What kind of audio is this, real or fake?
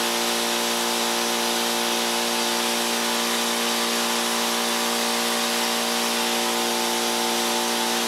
real